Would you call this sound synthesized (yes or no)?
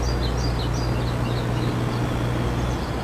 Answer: no